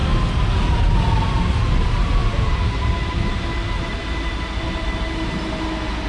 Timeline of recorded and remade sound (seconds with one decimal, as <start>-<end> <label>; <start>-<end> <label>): 0.0-6.1 recorded

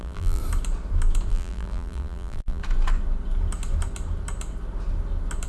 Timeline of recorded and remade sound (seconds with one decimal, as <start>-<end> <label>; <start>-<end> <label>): 0.0-0.4 remade; 0.4-1.3 recorded; 1.3-2.6 remade; 2.6-5.5 recorded

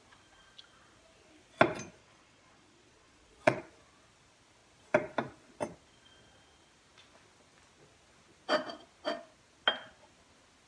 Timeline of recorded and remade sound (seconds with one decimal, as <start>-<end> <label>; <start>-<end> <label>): 0.0-2.0 recorded; 2.0-3.6 remade; 3.6-10.7 recorded

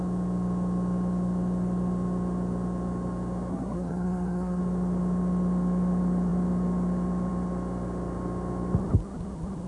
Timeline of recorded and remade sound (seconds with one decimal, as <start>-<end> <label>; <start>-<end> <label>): 0.0-3.5 recorded; 3.5-4.6 remade; 4.6-9.7 recorded

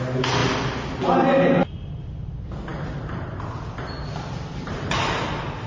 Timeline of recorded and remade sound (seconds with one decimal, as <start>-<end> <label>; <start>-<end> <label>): 0.0-5.7 recorded

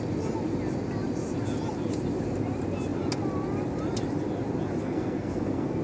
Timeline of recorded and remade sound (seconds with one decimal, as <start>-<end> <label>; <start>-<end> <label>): 0.0-4.8 recorded; 4.8-5.8 remade

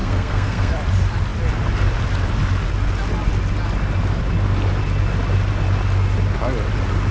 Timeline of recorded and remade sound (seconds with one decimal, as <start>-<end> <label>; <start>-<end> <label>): 0.0-0.7 remade; 0.7-7.1 recorded